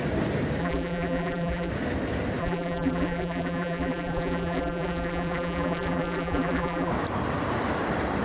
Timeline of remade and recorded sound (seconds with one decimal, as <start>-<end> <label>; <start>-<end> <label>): 0.0-0.6 recorded; 0.6-1.7 remade; 1.7-2.4 recorded; 2.4-6.9 remade; 6.9-8.2 recorded